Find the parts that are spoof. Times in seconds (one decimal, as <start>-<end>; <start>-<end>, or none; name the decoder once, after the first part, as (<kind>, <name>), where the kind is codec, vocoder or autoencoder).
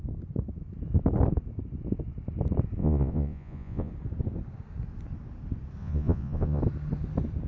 2.8-3.9 (vocoder, Vocos); 5.8-6.6